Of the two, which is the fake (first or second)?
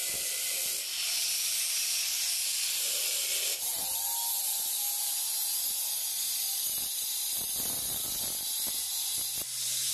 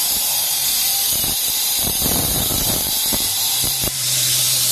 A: second